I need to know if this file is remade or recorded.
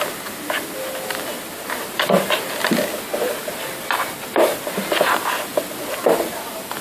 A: recorded